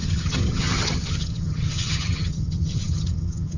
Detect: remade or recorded remade